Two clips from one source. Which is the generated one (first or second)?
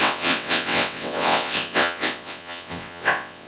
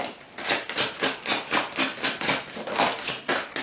first